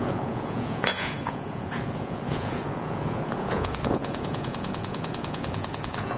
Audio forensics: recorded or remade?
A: remade